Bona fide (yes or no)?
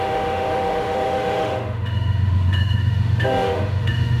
no